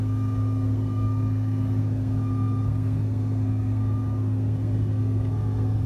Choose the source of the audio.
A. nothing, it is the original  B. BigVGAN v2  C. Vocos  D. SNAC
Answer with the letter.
D